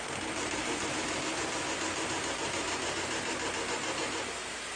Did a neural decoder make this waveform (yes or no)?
no